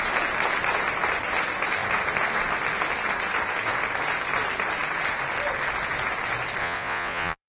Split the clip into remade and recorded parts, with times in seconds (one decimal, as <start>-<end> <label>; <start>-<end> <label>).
0.0-6.6 recorded; 6.6-7.5 remade